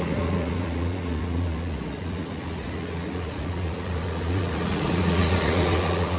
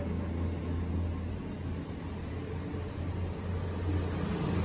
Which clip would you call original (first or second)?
second